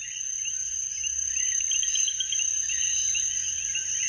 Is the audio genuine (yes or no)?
yes